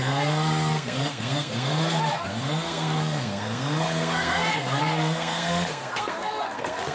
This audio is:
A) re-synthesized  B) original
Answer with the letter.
A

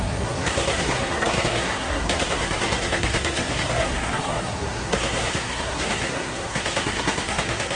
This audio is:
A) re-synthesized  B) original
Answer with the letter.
A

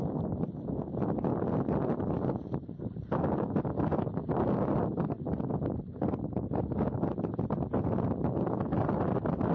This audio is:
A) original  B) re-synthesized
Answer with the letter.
A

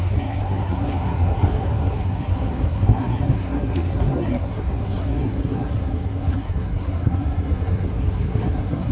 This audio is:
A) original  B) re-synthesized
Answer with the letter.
B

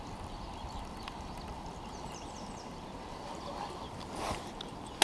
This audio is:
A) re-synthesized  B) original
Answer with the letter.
B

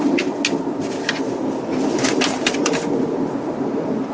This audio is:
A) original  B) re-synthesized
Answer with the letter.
A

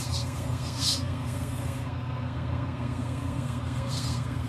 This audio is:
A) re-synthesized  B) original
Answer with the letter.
A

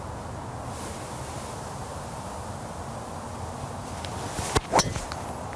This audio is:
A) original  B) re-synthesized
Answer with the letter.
A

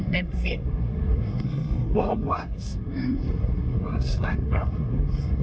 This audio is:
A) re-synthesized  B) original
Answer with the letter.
A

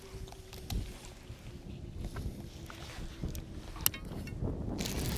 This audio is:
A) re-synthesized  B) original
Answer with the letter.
B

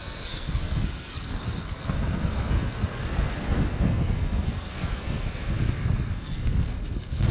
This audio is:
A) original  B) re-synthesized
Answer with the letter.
B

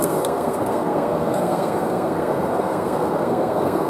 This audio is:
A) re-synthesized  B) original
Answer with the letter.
A